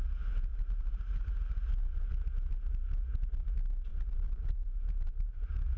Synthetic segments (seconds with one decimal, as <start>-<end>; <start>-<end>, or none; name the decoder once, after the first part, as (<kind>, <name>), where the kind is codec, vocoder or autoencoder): 0.5-2.1 (vocoder, BigVGAN v2); 3.9-5.8